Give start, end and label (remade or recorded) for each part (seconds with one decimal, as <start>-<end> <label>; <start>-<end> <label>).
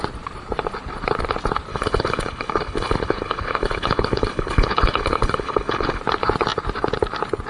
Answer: 0.0-1.7 recorded; 1.7-6.0 remade; 6.0-7.5 recorded